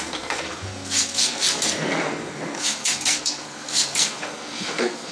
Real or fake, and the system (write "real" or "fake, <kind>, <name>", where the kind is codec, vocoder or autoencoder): fake, codec, SNAC